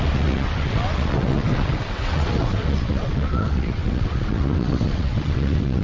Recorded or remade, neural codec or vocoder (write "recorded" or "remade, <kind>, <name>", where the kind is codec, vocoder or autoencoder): remade, vocoder, WaveNeXt